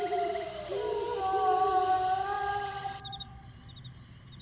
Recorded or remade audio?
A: recorded